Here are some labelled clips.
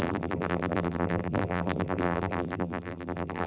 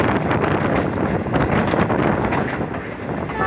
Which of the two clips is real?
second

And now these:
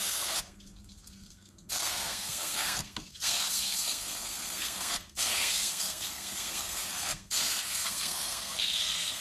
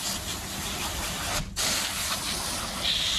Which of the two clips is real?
second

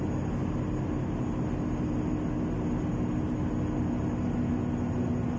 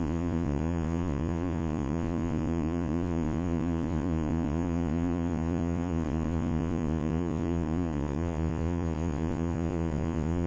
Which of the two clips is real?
first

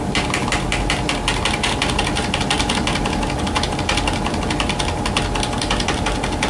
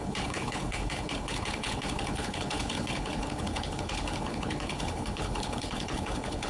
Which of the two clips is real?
first